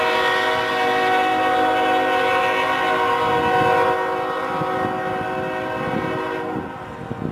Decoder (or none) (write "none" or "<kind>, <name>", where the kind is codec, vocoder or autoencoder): none